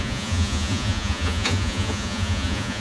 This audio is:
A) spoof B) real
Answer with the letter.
A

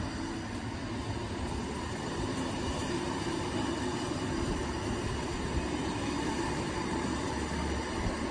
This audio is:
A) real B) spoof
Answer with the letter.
A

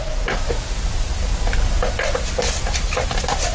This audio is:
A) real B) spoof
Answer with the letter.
A